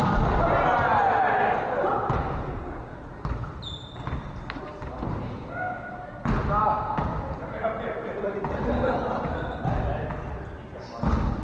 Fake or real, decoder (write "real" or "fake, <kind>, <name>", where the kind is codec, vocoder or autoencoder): real